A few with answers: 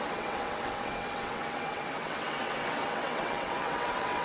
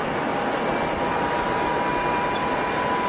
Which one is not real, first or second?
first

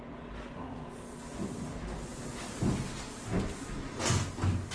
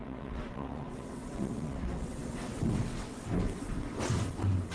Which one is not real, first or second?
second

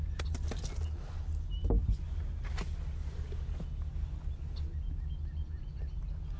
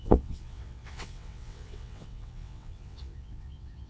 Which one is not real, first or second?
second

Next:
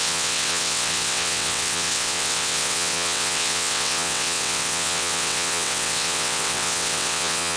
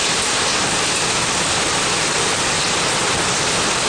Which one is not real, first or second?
first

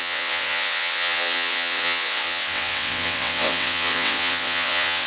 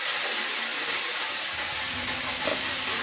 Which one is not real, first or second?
first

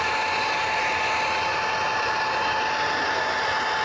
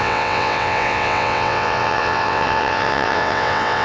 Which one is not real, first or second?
second